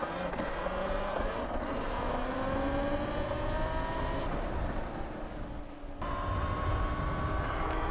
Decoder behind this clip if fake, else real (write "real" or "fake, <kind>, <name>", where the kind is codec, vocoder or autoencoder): real